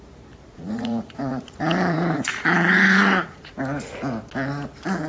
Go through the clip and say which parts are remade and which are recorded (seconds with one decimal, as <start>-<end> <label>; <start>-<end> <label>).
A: 0.0-0.5 recorded; 0.5-3.6 remade; 3.6-5.1 recorded